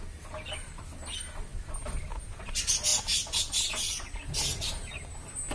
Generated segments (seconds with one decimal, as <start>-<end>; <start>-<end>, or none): none